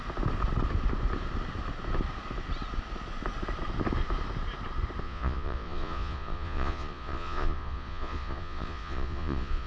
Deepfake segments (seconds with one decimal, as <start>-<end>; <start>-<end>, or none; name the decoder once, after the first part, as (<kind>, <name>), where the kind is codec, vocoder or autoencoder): 5.0-9.7 (vocoder, Vocos)